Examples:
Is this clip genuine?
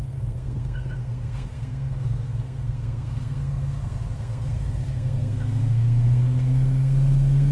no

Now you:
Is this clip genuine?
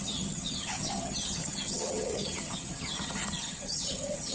no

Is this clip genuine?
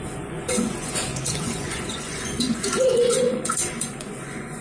no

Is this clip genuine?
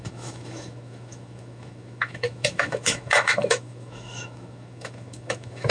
no